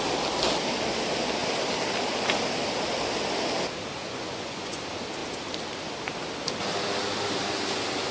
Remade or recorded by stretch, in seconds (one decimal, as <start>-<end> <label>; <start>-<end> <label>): 0.0-4.0 recorded; 4.0-4.8 remade; 4.8-8.1 recorded